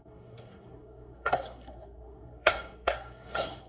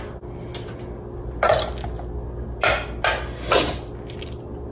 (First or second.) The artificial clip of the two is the first